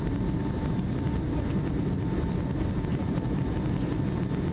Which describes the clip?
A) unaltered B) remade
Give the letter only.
B